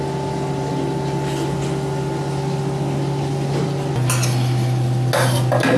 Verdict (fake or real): real